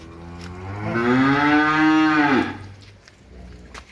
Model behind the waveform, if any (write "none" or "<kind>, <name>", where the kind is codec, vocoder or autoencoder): none